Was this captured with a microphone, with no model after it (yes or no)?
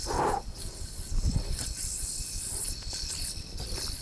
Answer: yes